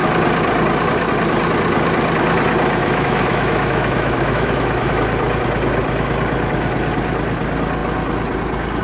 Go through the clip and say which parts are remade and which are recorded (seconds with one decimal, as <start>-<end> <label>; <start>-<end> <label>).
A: 0.0-2.8 recorded; 2.8-4.9 remade; 4.9-8.8 recorded